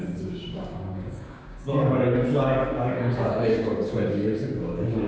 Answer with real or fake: fake